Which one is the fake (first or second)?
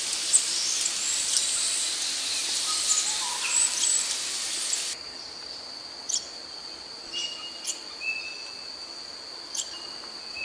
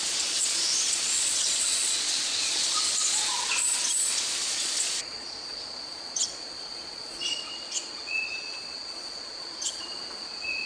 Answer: second